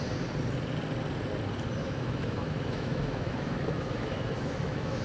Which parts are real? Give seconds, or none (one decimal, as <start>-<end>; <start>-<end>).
0.0-1.8